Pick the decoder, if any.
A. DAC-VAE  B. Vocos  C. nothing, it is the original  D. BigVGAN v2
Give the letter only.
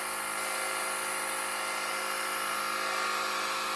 C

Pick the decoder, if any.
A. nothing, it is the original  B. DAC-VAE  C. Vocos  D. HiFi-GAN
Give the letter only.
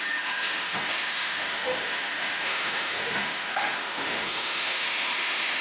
B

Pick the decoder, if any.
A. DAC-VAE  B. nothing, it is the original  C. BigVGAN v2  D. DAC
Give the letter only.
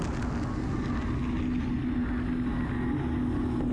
B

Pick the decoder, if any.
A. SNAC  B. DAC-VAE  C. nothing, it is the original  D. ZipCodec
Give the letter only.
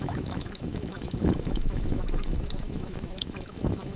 B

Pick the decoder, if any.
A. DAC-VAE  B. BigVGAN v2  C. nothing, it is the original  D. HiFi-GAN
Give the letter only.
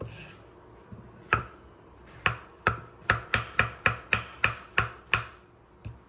C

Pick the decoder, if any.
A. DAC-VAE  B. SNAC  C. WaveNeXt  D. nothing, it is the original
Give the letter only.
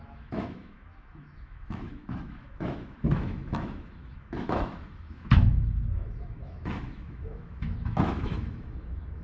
A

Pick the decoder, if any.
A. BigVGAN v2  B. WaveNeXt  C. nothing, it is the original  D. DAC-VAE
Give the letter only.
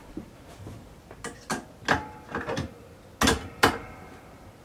C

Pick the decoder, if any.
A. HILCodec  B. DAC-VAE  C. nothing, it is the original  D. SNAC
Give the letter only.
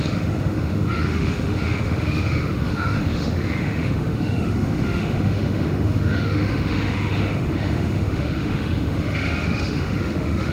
B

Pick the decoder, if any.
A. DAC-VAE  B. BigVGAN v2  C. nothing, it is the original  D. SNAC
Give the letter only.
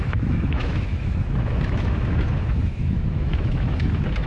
A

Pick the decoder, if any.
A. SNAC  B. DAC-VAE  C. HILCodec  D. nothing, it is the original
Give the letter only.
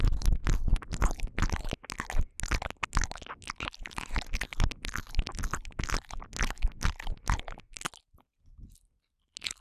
D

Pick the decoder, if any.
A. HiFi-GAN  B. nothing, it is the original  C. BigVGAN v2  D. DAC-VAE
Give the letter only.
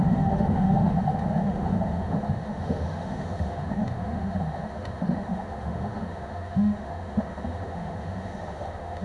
D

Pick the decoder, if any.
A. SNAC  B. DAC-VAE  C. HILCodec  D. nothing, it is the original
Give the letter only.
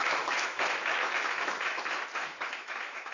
B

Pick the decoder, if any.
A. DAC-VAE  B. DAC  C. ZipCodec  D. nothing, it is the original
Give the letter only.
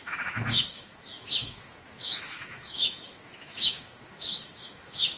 A